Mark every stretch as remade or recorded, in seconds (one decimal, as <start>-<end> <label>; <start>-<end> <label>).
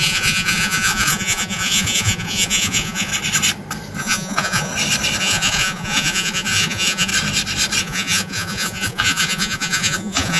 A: 0.0-3.1 remade; 3.1-4.0 recorded; 4.0-4.7 remade; 4.7-5.2 recorded; 5.2-7.1 remade; 7.1-7.8 recorded; 7.8-10.4 remade